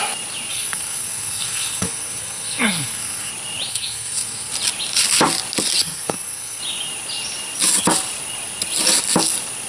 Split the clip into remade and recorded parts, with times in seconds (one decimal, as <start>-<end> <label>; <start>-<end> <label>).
0.0-0.5 recorded; 0.5-3.3 remade; 3.3-3.7 recorded; 3.7-4.5 remade; 4.5-5.8 recorded; 5.8-6.6 remade; 6.6-9.7 recorded